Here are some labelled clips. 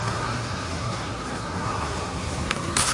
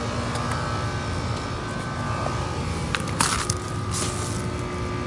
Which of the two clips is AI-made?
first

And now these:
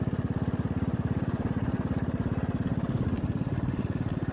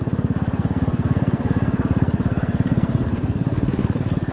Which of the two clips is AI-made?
second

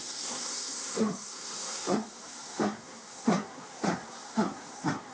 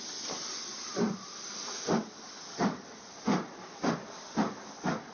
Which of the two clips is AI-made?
first